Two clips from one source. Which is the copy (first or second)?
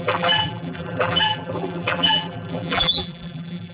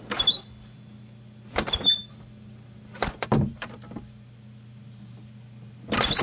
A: first